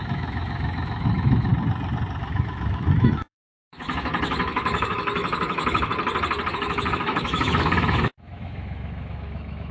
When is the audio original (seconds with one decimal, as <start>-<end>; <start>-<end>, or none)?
1.5-2.2; 5.9-6.5